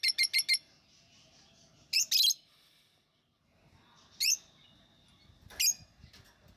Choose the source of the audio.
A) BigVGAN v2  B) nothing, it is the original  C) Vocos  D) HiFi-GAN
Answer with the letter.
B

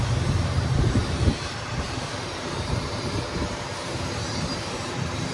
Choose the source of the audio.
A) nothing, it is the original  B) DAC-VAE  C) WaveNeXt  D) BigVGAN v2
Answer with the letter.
D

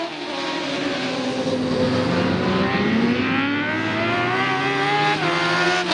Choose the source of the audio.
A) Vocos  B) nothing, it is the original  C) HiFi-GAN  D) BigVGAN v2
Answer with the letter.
B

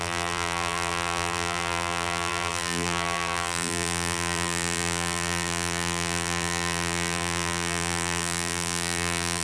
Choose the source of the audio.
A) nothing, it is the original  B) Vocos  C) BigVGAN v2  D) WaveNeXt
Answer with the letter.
C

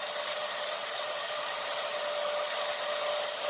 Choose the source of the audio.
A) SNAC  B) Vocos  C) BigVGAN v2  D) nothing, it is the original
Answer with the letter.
D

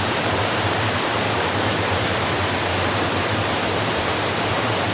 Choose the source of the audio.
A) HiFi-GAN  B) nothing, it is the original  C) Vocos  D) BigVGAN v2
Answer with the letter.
D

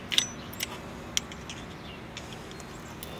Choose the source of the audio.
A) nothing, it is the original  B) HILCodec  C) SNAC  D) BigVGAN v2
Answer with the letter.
A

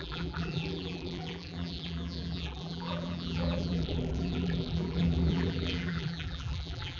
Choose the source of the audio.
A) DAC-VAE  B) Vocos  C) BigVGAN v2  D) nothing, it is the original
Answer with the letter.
C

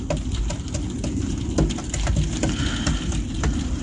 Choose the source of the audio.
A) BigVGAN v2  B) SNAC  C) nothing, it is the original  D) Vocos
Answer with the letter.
C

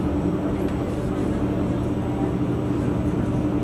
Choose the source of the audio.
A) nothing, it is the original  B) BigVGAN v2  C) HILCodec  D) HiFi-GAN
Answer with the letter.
A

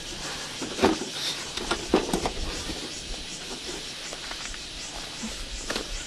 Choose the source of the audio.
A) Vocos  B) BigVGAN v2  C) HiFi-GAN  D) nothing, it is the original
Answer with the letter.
B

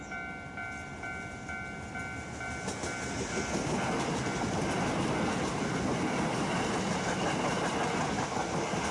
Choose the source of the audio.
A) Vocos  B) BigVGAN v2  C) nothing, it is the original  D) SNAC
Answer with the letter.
C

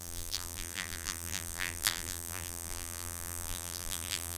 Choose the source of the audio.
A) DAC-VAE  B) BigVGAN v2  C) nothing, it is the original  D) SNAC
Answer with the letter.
B